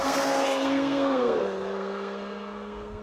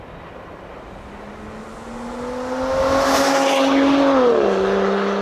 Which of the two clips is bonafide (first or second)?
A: second